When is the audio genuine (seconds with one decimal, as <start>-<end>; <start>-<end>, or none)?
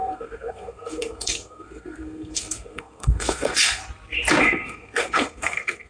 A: 3.8-4.4